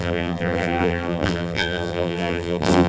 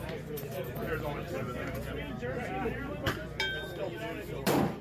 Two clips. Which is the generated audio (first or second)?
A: first